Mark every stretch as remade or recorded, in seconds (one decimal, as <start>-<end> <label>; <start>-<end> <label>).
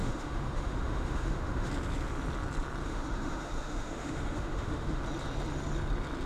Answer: 0.0-1.7 remade; 1.7-2.8 recorded; 2.8-5.0 remade; 5.0-6.3 recorded